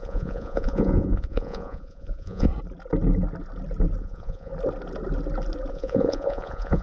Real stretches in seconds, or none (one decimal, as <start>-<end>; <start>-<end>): 2.5-4.0; 4.5-5.7